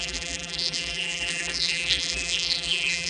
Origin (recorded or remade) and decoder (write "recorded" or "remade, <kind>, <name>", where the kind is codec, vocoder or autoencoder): remade, vocoder, BigVGAN v2